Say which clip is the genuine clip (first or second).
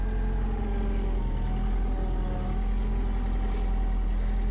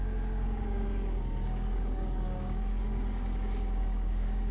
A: first